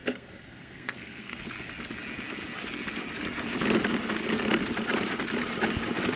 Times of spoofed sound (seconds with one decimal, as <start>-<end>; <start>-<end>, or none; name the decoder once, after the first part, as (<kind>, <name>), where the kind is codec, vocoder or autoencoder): 0.0-1.4 (codec, SNAC)